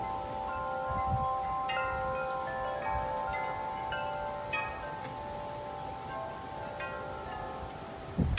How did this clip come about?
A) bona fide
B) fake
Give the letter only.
A